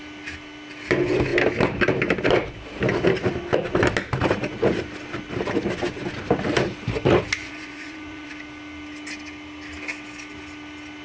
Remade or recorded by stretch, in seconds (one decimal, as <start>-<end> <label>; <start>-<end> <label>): 0.0-7.4 recorded; 7.4-8.3 remade; 8.3-11.0 recorded